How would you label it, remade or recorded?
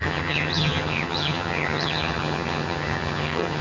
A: remade